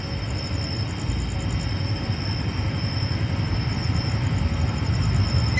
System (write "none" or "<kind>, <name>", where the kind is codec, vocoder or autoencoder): none